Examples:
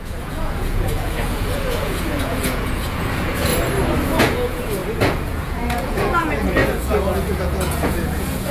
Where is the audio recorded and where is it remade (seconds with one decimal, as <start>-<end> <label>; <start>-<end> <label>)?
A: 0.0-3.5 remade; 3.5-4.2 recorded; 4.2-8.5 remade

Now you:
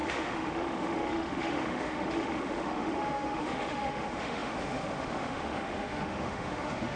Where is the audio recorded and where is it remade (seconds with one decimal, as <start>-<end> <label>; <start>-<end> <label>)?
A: 0.0-7.0 remade

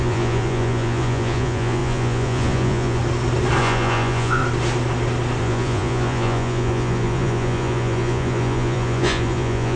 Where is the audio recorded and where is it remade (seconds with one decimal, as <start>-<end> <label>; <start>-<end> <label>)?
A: 0.0-3.0 remade; 3.0-3.6 recorded; 3.6-4.4 remade; 4.4-5.4 recorded; 5.4-9.8 remade

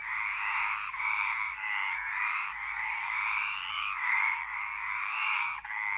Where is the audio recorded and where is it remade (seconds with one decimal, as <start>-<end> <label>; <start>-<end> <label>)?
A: 0.0-1.5 recorded; 1.5-3.1 remade; 3.1-3.7 recorded; 3.7-6.0 remade

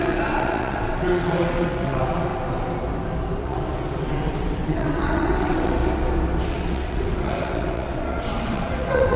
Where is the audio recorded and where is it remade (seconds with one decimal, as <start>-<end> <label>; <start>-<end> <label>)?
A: 0.0-2.3 remade; 2.3-3.4 recorded; 3.4-5.8 remade; 5.8-6.5 recorded; 6.5-9.2 remade